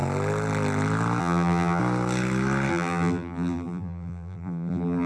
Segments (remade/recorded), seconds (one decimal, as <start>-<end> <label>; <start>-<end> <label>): 0.0-1.2 recorded; 1.2-1.8 remade; 1.8-2.7 recorded; 2.7-5.1 remade